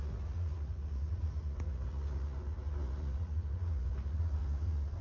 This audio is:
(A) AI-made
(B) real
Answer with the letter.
A